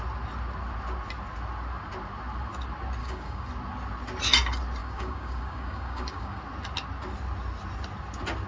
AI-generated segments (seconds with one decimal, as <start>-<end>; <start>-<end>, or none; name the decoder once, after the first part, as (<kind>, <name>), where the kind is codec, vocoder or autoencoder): 3.0-3.5 (codec, DAC); 4.8-6.4